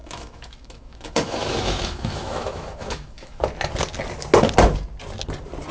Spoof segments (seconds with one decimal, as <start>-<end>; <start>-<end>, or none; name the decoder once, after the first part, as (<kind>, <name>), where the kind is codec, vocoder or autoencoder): 0.0-3.4 (autoencoder, DAC-VAE)